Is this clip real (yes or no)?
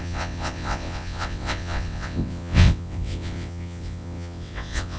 no